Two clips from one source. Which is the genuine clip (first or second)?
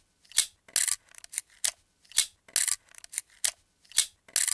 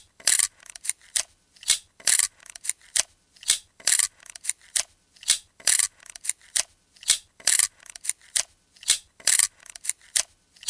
first